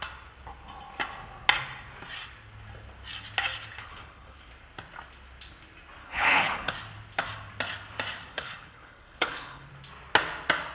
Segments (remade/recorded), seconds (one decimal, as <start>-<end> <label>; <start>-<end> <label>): 0.0-3.8 recorded; 3.8-4.5 remade; 4.5-6.0 recorded; 6.0-6.7 remade; 6.7-8.3 recorded; 8.3-9.7 remade; 9.7-10.7 recorded

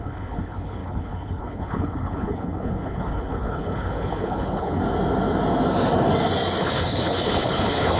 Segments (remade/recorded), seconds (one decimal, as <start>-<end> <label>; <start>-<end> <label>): 0.0-4.8 remade; 4.8-6.6 recorded; 6.6-8.0 remade

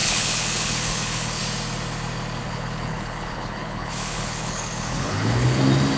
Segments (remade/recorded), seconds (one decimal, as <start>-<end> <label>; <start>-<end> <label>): 0.0-1.4 remade; 1.4-2.4 recorded; 2.4-5.6 remade; 5.6-6.0 recorded

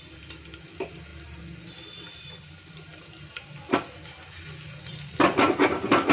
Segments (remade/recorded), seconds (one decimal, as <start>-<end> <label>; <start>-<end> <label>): 0.0-6.1 recorded